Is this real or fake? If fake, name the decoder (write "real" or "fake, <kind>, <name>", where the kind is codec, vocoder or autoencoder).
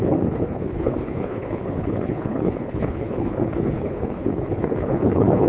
fake, codec, HILCodec